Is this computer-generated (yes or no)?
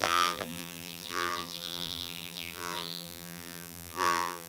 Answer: yes